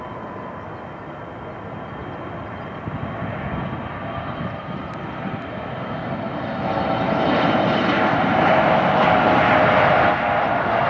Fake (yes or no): no